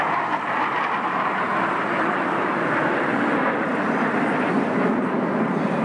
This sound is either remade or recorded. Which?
recorded